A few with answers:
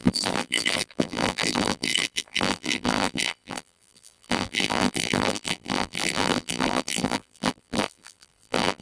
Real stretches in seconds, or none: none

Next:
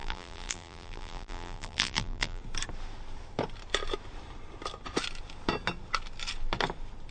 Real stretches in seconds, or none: 2.4-7.1

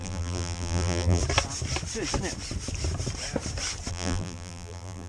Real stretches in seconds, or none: 1.2-3.9